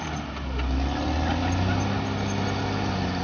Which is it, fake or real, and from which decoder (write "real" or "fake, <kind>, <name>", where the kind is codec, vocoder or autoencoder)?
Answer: real